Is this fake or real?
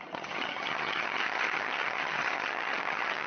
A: fake